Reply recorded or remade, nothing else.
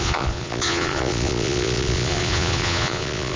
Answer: remade